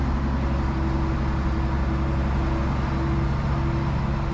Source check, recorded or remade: recorded